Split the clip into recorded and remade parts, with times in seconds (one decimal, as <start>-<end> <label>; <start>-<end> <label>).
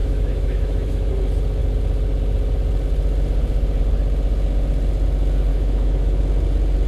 0.0-1.1 remade; 1.1-5.5 recorded; 5.5-6.2 remade; 6.2-6.9 recorded